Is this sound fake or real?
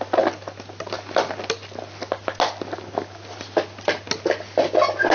real